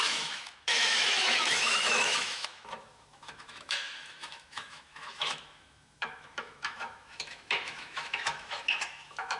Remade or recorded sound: remade